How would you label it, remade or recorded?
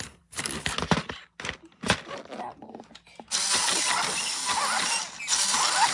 recorded